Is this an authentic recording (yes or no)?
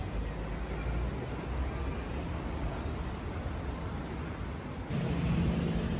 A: yes